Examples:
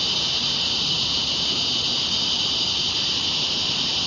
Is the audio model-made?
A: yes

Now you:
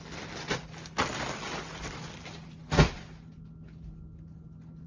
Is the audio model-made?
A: no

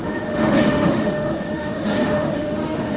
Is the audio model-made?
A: yes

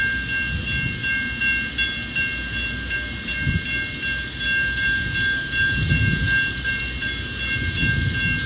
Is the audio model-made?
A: no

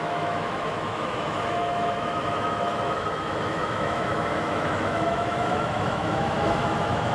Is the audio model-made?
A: yes